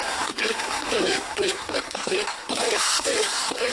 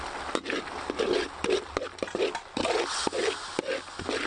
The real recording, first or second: second